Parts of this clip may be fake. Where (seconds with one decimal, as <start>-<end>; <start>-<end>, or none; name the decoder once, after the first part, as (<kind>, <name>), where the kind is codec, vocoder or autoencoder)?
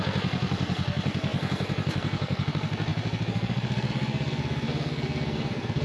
0.0-5.8 (codec, SNAC)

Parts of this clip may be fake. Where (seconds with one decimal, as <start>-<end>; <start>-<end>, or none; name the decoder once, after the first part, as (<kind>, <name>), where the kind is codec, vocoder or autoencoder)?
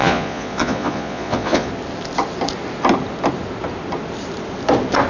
0.0-1.7 (vocoder, Vocos)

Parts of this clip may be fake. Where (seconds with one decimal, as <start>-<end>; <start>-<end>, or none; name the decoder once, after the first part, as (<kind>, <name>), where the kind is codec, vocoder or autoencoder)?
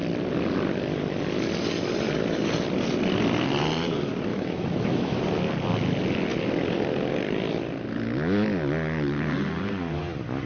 4.3-5.2 (autoencoder, DAC-VAE)